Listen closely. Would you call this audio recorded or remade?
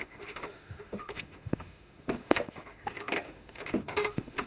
remade